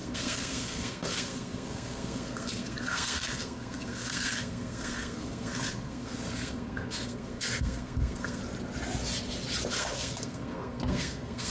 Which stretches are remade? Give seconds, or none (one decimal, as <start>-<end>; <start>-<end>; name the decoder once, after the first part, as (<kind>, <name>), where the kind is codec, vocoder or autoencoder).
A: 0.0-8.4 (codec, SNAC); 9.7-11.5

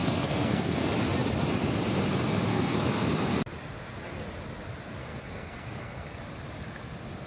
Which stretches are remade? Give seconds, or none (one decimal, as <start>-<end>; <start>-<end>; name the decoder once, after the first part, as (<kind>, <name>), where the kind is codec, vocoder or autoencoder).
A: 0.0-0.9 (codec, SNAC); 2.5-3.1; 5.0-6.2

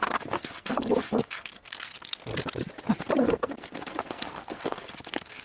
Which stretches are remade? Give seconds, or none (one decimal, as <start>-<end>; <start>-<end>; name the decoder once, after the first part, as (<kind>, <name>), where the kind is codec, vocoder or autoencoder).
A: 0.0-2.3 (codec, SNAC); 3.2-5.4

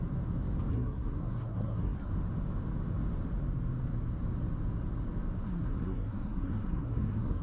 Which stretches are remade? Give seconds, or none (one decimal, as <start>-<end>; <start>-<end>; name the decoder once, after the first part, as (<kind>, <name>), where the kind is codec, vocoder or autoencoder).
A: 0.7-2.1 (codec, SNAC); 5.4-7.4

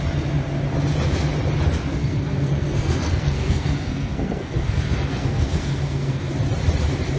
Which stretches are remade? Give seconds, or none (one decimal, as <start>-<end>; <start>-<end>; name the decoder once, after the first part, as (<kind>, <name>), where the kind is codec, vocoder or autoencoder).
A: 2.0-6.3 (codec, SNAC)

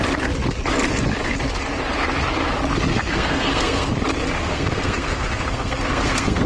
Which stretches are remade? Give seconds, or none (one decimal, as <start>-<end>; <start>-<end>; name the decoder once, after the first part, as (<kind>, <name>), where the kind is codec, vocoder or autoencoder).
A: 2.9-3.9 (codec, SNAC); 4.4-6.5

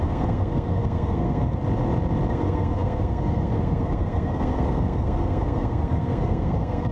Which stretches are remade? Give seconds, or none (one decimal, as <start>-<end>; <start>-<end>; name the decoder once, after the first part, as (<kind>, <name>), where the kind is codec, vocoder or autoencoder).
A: 0.0-1.6 (codec, SNAC); 2.3-6.9

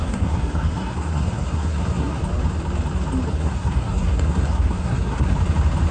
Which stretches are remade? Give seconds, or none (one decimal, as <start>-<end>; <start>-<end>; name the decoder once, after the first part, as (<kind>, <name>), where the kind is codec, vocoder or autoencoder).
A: 0.0-2.2 (codec, SNAC); 3.3-5.3